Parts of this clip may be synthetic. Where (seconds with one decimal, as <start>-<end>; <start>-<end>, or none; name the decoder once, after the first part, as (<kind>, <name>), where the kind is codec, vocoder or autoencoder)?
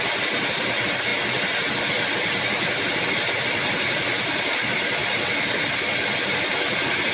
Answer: 0.0-1.1 (vocoder, BigVGAN v2); 3.0-5.0; 6.3-7.1